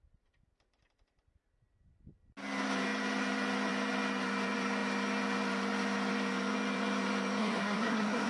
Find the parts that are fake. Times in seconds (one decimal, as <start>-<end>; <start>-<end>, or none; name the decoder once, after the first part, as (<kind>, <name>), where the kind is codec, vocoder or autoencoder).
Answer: 7.4-8.3 (codec, SNAC)